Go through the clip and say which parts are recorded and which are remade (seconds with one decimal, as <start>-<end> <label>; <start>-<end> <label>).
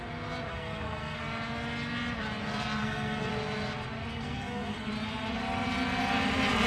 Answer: 0.0-0.5 recorded; 0.5-1.2 remade; 1.2-2.8 recorded; 2.8-3.3 remade; 3.3-4.1 recorded; 4.1-4.9 remade; 4.9-6.7 recorded